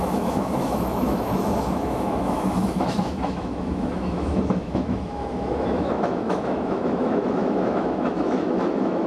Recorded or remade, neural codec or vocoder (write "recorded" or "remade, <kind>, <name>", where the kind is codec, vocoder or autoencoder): remade, autoencoder, DAC-VAE